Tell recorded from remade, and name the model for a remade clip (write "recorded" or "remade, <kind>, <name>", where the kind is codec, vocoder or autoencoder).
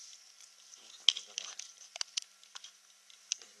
recorded